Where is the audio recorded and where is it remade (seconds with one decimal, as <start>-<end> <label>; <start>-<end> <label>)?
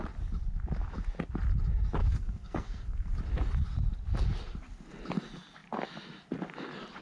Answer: 0.0-2.0 recorded; 2.0-3.1 remade; 3.1-7.0 recorded